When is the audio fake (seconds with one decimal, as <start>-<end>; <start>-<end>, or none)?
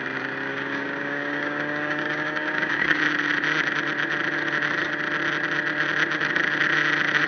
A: 0.5-3.0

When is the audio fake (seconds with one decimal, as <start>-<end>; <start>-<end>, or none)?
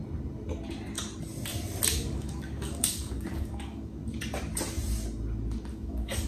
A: 1.9-4.0; 5.7-6.3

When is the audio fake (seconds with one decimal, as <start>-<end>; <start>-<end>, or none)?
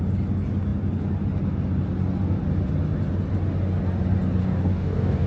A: 4.4-5.3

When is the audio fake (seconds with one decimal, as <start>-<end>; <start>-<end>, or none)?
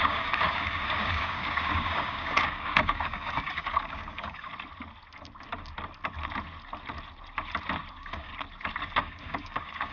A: 0.0-4.5; 7.9-8.3; 9.0-9.9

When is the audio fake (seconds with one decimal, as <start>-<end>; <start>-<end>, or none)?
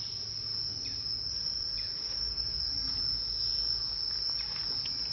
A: 2.0-2.6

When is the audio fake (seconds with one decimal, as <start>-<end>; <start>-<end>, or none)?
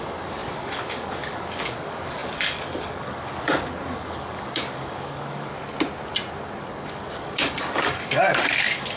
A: 0.0-5.5; 6.6-9.0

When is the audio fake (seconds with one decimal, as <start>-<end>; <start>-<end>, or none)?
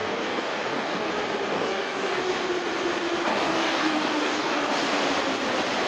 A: 0.0-1.1; 1.5-2.3; 3.3-4.6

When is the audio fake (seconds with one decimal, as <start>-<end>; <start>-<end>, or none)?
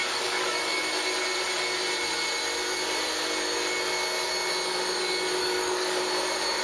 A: 0.0-0.8; 5.4-6.0